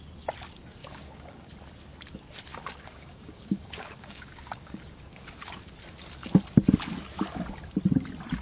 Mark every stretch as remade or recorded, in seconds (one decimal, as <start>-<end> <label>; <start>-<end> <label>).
0.0-0.8 recorded; 0.8-1.5 remade; 1.5-2.5 recorded; 2.5-5.7 remade; 5.7-8.4 recorded